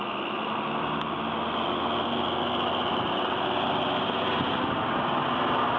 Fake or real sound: real